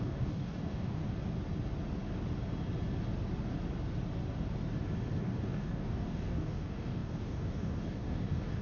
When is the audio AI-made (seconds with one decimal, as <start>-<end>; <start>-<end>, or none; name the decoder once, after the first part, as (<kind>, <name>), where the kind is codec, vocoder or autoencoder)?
0.0-1.0 (codec, DAC); 5.2-8.6